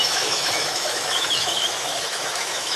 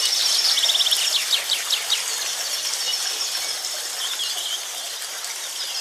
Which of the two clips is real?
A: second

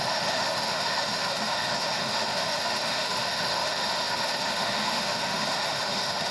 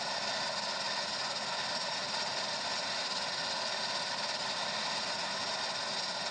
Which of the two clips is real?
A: second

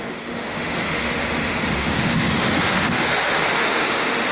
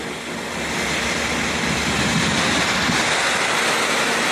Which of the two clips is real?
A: second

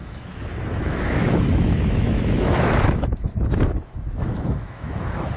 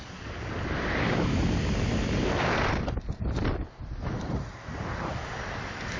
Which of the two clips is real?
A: second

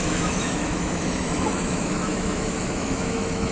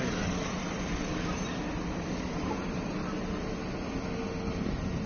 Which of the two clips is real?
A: second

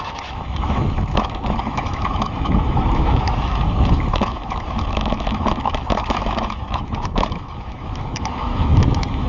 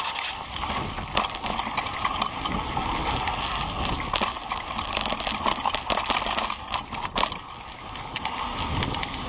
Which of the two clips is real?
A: second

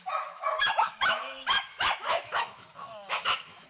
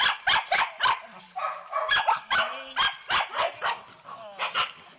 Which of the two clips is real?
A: second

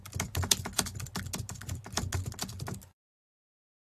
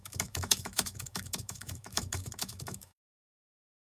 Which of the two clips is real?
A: first